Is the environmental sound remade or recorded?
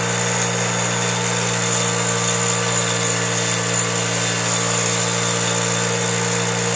recorded